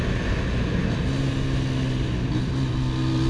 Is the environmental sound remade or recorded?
recorded